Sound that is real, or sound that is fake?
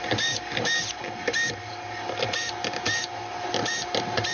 real